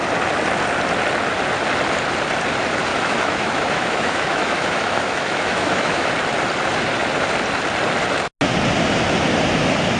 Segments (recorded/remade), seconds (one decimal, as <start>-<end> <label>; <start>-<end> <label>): 0.0-2.9 recorded; 2.9-6.1 remade; 6.1-10.0 recorded